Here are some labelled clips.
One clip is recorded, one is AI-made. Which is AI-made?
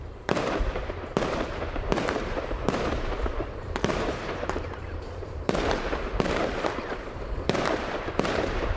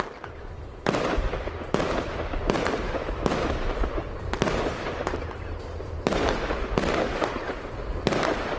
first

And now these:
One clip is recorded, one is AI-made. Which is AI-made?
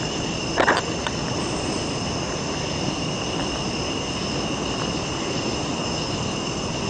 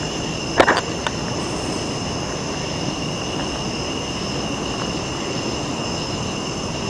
first